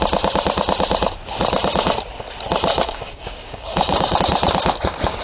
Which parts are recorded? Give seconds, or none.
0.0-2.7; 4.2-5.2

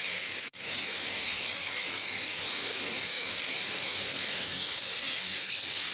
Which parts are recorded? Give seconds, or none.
none

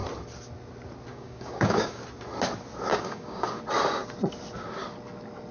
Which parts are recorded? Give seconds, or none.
0.0-1.1; 2.0-2.9; 3.6-5.5